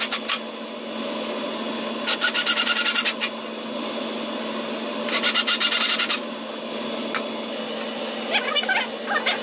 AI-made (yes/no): no